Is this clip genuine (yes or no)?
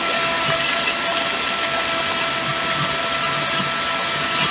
yes